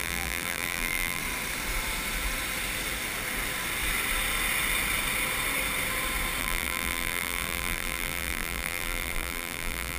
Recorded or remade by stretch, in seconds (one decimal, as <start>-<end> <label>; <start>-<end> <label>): 0.0-1.2 remade; 1.2-6.4 recorded; 6.4-10.0 remade